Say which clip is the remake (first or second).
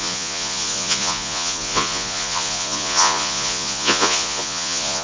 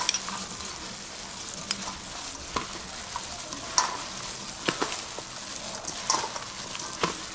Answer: first